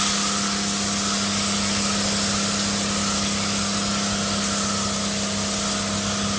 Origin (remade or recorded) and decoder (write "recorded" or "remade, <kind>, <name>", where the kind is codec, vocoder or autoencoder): recorded